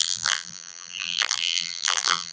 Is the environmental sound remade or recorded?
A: remade